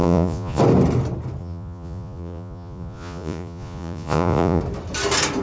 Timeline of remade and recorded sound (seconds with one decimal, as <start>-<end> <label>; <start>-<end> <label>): 0.0-0.6 remade; 0.6-1.4 recorded; 1.4-4.6 remade; 4.6-5.4 recorded